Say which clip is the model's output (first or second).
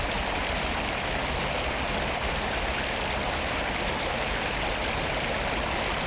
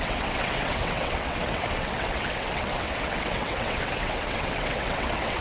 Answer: second